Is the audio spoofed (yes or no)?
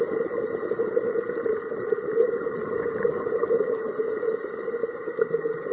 no